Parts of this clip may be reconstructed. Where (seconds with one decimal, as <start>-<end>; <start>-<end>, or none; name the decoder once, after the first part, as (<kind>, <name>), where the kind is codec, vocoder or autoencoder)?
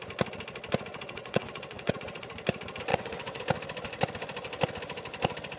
0.9-2.3 (vocoder, WaveNeXt); 2.9-3.4